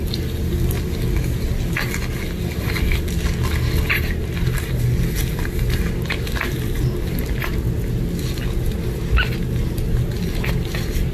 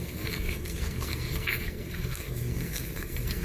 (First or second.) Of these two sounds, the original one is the first